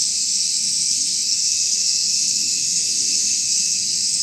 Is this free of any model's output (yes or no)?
no